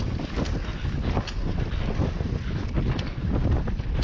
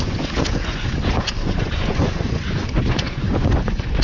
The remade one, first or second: second